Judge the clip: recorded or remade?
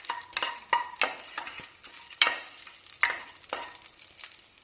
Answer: recorded